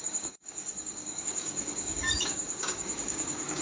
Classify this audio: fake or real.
fake